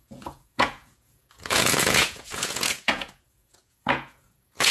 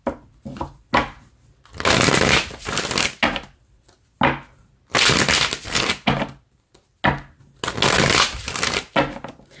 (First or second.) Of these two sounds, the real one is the second